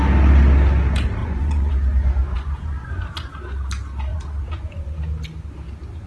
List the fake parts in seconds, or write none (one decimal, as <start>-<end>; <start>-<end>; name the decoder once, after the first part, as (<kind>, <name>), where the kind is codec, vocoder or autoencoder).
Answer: 1.2-1.7 (vocoder, Vocos); 2.3-3.3; 4.1-4.8